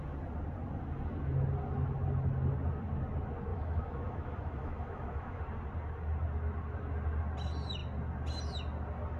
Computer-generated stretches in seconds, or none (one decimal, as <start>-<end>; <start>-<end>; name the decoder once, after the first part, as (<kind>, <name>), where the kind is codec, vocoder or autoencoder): 3.5-5.4 (autoencoder, DAC-VAE)